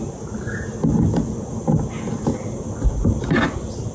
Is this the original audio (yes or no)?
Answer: yes